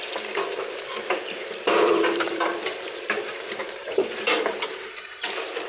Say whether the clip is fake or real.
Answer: fake